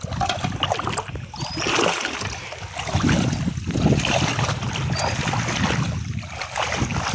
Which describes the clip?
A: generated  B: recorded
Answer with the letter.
B